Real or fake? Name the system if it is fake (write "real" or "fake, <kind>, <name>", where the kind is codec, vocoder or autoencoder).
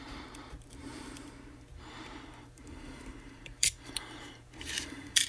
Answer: fake, vocoder, BigVGAN v2